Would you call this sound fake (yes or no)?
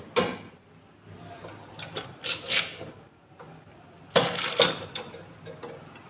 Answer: no